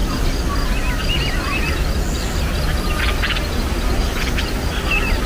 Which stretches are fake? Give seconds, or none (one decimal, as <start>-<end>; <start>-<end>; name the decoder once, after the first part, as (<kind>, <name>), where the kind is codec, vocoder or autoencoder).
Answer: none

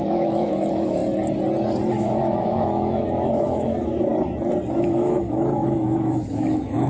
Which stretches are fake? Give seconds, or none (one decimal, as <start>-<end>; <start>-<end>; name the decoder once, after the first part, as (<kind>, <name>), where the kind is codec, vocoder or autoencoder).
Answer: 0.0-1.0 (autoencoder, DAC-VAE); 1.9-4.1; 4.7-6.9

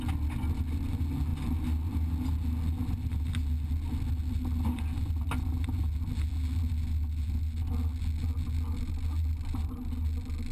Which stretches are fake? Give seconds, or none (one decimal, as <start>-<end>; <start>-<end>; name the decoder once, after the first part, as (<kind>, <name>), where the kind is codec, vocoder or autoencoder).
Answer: none

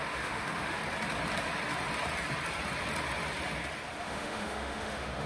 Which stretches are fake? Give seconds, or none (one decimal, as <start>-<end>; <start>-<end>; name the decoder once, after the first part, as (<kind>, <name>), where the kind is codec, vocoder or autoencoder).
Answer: 0.0-0.8 (autoencoder, DAC-VAE); 4.0-5.3

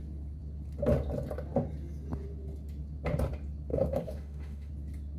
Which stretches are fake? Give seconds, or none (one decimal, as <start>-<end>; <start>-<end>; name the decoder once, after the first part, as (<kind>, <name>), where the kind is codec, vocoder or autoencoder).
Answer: 3.7-4.7 (autoencoder, DAC-VAE)

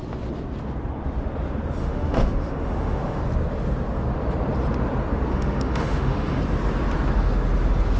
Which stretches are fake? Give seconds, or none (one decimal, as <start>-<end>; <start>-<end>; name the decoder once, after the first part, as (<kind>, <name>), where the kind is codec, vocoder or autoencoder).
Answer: 1.8-3.2 (autoencoder, DAC-VAE); 5.3-6.4

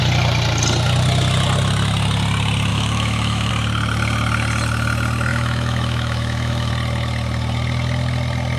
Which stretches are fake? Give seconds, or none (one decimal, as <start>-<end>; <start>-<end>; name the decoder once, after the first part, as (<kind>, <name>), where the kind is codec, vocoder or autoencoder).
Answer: 2.7-3.5 (autoencoder, DAC-VAE); 5.3-6.7